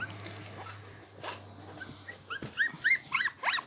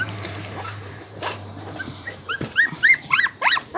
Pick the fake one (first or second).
second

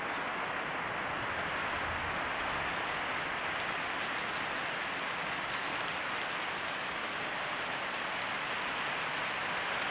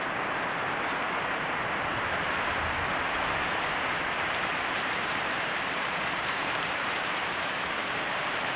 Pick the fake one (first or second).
second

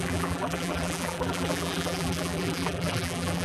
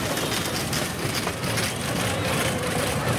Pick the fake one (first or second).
first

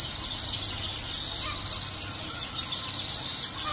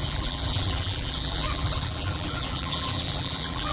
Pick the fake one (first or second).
second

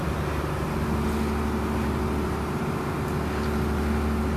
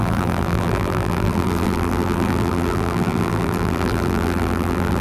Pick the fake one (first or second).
second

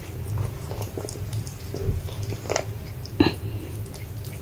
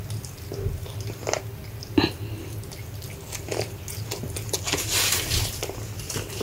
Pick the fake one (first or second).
first